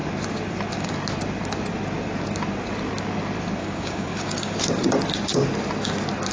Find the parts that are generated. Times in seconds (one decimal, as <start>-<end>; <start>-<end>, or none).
3.6-4.6